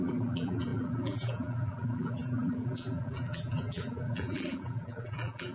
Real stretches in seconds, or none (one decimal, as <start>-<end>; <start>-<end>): none